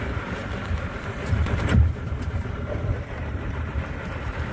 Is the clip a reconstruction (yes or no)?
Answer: yes